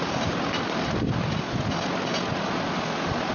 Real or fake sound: real